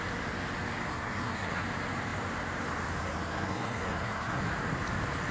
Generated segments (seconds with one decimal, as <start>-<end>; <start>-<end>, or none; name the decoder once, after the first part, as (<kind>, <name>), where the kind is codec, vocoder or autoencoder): 0.9-1.6 (codec, SNAC); 3.0-4.4